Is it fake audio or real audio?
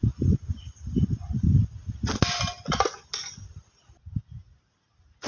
real